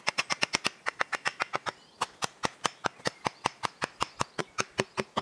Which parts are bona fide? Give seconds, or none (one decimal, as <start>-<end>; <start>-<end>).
0.0-5.2